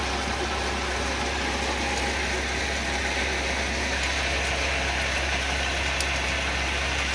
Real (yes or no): yes